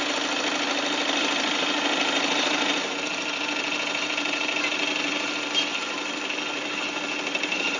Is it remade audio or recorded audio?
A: recorded